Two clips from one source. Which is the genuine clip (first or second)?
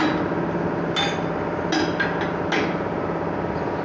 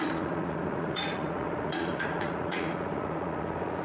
first